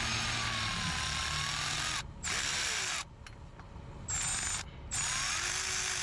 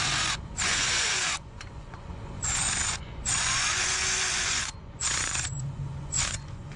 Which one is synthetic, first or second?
second